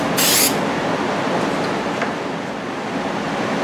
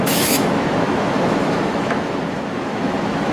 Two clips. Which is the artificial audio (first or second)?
second